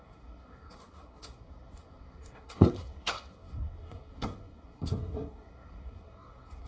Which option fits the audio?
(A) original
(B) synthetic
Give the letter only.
B